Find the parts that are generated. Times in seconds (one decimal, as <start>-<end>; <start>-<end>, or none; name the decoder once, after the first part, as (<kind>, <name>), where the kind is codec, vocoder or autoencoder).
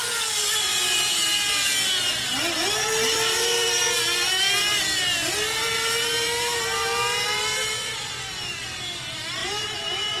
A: none